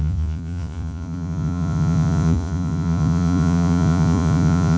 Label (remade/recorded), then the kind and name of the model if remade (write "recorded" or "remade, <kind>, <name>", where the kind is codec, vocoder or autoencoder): remade, vocoder, Vocos